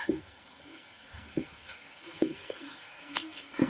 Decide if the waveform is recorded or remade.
remade